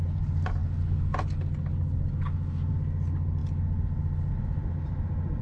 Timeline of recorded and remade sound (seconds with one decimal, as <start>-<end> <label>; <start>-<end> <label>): 0.0-5.4 recorded